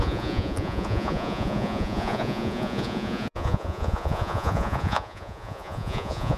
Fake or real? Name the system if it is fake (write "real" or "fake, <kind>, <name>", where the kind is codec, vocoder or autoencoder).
fake, vocoder, Vocos